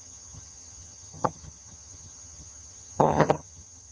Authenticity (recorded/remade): remade